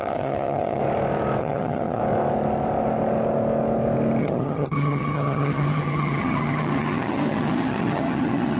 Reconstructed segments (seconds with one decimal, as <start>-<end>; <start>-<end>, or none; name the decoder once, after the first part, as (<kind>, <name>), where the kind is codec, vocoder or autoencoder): 0.0-0.8 (vocoder, HiFi-GAN); 1.4-2.0; 4.2-8.6